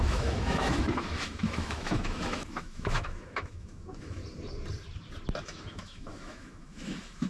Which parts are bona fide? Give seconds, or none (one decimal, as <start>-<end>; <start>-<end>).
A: 4.2-5.4